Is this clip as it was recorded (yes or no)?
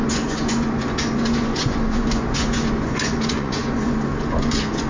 no